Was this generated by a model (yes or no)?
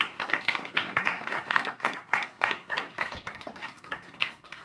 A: yes